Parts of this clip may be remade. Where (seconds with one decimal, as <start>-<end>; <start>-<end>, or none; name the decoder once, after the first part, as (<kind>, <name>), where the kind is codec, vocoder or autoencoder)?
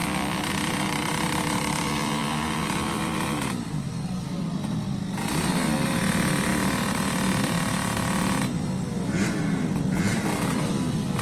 0.0-4.2 (vocoder, BigVGAN v2); 6.5-9.3; 10.1-11.2